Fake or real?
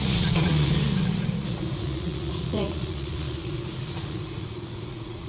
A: fake